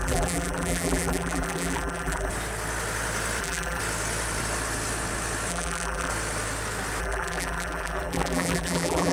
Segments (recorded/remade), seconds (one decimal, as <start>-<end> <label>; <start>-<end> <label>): 0.0-2.3 remade; 2.3-3.4 recorded; 3.4-3.8 remade; 3.8-5.5 recorded; 5.5-6.1 remade; 6.1-7.0 recorded; 7.0-9.1 remade